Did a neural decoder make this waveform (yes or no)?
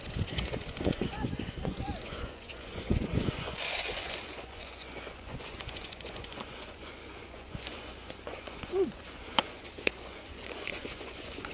yes